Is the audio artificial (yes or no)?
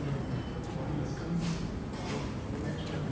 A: no